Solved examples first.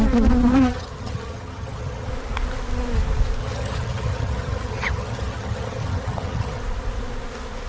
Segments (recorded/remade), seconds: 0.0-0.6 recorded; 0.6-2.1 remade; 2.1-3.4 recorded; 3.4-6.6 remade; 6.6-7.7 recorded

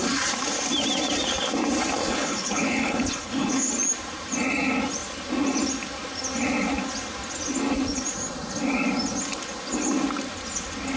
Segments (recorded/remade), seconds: 0.0-2.0 recorded; 2.0-3.7 remade; 3.7-11.0 recorded